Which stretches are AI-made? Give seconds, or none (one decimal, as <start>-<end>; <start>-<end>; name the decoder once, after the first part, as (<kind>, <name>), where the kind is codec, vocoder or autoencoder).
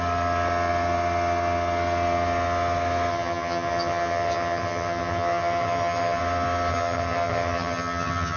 3.1-6.2 (vocoder, HiFi-GAN); 6.7-8.4